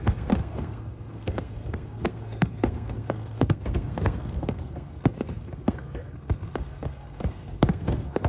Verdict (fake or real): fake